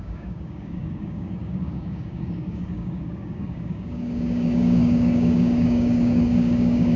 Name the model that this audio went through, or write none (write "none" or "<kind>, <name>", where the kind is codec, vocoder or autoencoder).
codec, DAC